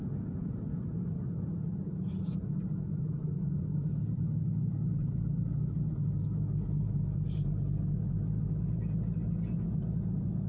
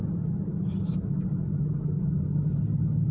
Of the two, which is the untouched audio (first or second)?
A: second